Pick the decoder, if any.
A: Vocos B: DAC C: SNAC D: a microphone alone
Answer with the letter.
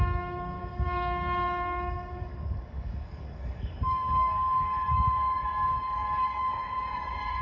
B